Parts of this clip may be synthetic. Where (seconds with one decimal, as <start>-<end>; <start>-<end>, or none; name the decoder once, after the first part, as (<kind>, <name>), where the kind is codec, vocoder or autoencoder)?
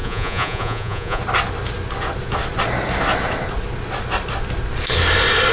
0.0-1.2 (vocoder, Vocos)